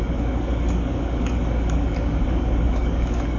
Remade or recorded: remade